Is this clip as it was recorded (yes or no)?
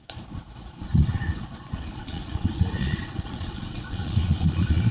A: no